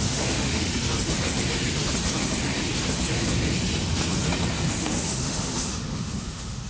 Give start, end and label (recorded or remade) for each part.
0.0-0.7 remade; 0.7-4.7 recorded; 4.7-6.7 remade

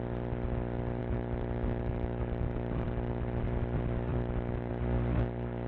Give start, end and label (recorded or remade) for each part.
0.0-1.0 recorded; 1.0-3.4 remade; 3.4-4.1 recorded; 4.1-4.7 remade; 4.7-5.7 recorded

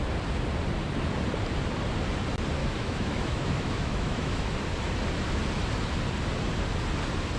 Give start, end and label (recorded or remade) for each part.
0.0-2.6 recorded; 2.6-4.6 remade; 4.6-7.4 recorded

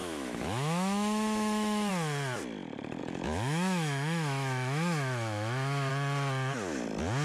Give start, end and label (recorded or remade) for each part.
0.0-1.9 remade; 1.9-3.0 recorded; 3.0-5.9 remade; 5.9-7.2 recorded

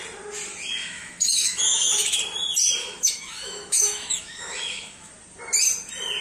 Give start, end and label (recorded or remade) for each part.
0.0-0.8 recorded; 0.8-2.2 remade; 2.2-2.8 recorded; 2.8-5.1 remade; 5.1-6.2 recorded

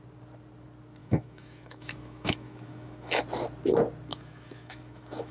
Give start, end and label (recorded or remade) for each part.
0.0-1.0 recorded; 1.0-3.2 remade; 3.2-4.1 recorded; 4.1-5.3 remade